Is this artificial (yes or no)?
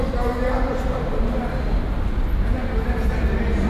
no